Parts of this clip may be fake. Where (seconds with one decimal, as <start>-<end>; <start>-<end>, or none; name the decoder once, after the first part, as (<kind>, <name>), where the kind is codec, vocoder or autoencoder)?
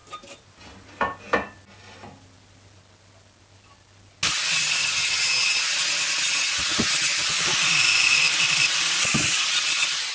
4.8-5.3 (vocoder, HiFi-GAN)